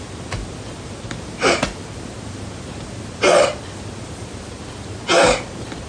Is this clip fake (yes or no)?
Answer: no